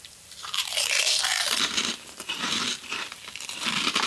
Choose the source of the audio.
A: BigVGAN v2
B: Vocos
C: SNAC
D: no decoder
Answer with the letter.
A